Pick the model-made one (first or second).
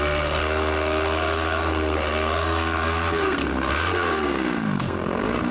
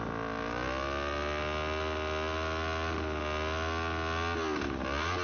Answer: first